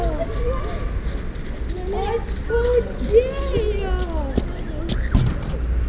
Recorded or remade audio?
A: recorded